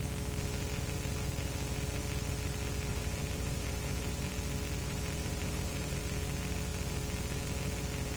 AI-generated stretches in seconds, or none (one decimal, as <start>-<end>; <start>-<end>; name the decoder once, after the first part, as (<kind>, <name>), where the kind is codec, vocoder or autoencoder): 2.9-4.3 (vocoder, BigVGAN v2); 4.8-6.0